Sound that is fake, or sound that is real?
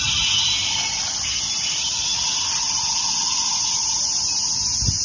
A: real